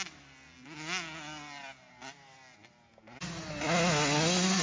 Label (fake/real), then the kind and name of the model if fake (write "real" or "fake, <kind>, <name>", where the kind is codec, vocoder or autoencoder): real